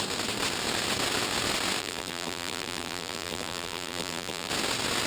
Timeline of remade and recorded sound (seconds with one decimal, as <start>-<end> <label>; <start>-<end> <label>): 0.0-1.8 recorded; 1.8-4.5 remade; 4.5-5.1 recorded